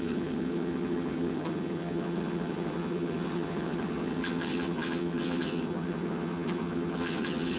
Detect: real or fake fake